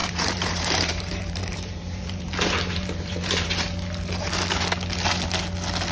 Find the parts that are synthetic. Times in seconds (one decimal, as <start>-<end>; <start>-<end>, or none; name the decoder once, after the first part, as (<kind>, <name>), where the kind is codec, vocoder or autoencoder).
0.0-3.5 (vocoder, BigVGAN v2)